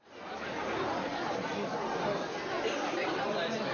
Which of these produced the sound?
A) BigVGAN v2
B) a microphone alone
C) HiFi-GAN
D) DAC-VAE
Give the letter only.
B